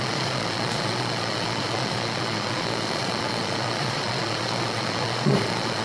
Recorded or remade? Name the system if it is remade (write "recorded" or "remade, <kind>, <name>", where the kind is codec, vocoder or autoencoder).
remade, vocoder, Vocos